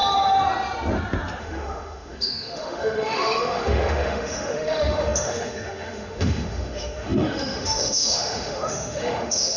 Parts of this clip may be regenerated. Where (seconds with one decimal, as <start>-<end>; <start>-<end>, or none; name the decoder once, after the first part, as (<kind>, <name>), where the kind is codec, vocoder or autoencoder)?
1.4-9.6 (autoencoder, DAC-VAE)